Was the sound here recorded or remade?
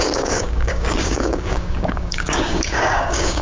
remade